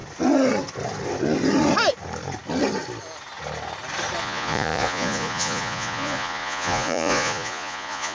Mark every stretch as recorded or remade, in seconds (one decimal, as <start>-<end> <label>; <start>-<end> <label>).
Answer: 0.0-4.2 recorded; 4.2-8.1 remade